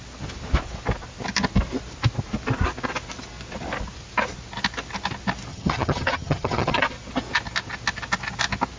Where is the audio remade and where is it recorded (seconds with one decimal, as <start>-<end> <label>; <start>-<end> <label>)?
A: 0.0-5.5 recorded; 5.5-6.8 remade; 6.8-8.8 recorded